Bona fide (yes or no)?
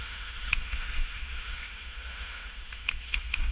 no